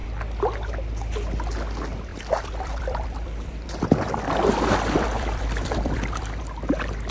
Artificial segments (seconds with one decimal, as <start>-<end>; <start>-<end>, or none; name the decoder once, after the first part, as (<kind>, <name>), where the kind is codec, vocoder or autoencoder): 2.1-6.4 (vocoder, BigVGAN v2)